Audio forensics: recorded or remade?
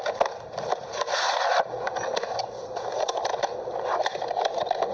recorded